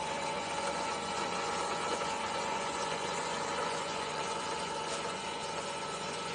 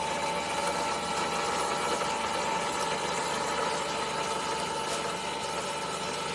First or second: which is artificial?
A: first